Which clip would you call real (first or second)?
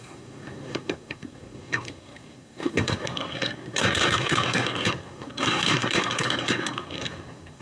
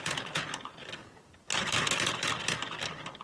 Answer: second